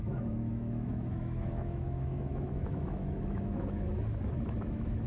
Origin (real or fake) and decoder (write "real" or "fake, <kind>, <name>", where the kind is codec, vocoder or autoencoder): fake, autoencoder, DAC-VAE